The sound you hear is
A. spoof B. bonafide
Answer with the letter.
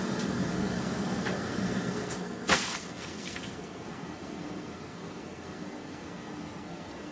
A